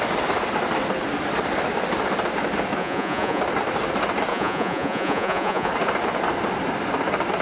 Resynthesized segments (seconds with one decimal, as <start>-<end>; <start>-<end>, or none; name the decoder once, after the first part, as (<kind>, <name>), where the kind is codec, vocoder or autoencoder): 2.8-3.4 (vocoder, Vocos); 4.3-5.7